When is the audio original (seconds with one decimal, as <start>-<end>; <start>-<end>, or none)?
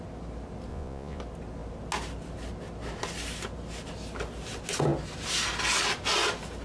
0.0-0.7; 1.2-6.6